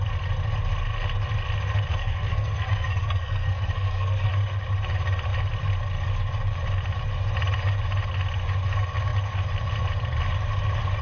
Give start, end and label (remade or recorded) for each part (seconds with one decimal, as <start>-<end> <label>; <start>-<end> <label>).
0.0-2.0 recorded; 2.0-4.3 remade; 4.3-11.0 recorded